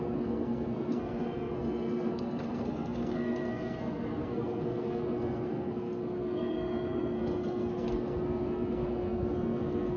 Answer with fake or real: fake